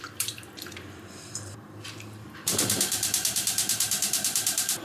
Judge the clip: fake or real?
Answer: fake